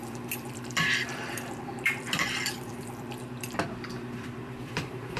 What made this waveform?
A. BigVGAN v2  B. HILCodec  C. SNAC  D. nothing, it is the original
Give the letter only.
A